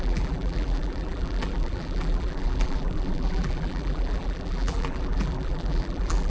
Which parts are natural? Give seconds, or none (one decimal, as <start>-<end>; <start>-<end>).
none